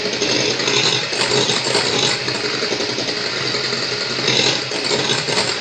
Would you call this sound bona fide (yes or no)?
yes